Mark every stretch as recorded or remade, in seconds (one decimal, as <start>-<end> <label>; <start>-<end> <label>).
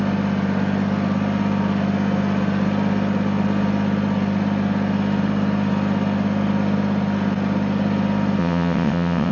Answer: 0.0-8.4 recorded; 8.4-9.3 remade